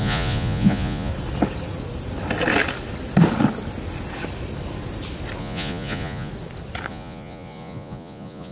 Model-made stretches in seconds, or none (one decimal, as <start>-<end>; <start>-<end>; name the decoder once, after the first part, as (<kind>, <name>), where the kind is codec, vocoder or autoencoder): 0.0-1.1 (vocoder, Vocos); 5.4-6.3; 6.9-8.5